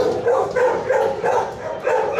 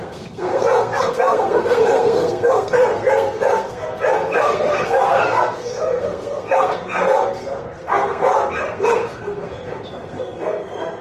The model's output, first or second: second